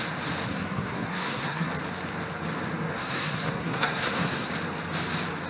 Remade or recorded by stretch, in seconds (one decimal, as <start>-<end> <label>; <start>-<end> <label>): 0.0-0.5 recorded; 0.5-1.7 remade; 1.7-3.0 recorded; 3.0-4.5 remade; 4.5-5.5 recorded